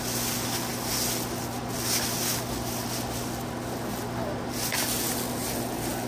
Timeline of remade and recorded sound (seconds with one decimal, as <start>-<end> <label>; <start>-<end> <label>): 0.0-6.1 recorded